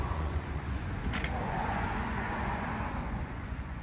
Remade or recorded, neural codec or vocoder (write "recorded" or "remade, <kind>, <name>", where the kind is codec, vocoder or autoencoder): remade, vocoder, Vocos